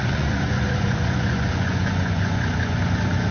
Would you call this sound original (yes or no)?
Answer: no